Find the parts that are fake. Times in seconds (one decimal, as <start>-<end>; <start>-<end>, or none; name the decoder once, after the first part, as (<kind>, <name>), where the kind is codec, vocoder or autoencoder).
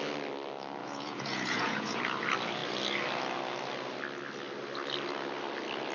0.8-2.0 (vocoder, Vocos)